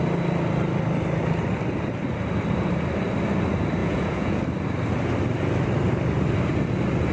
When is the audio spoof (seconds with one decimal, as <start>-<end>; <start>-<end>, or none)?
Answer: 3.8-4.4